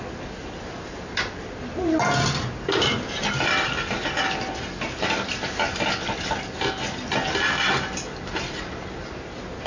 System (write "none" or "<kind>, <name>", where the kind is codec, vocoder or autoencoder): none